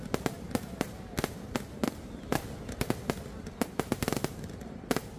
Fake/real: real